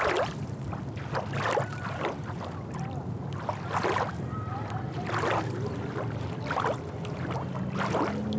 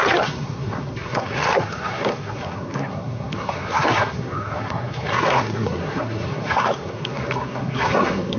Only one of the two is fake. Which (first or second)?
second